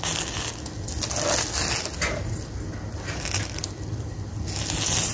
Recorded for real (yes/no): yes